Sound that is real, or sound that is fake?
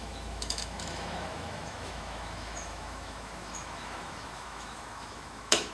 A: fake